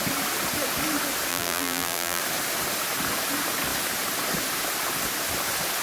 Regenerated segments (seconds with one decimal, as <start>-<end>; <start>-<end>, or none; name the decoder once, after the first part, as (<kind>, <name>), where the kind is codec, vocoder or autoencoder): 1.3-2.2 (vocoder, BigVGAN v2)